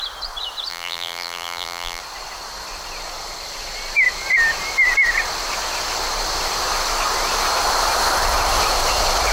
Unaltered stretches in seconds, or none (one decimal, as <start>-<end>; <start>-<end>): 0.0-0.7; 2.0-9.3